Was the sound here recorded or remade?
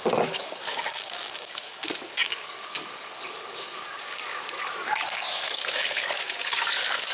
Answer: remade